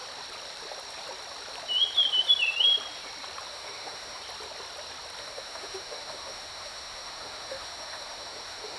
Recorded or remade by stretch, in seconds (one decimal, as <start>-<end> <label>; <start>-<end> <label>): 0.0-3.5 recorded; 3.5-4.2 remade; 4.2-5.2 recorded; 5.2-8.8 remade